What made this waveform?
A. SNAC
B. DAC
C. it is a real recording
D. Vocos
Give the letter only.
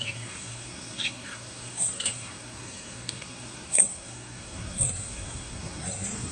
A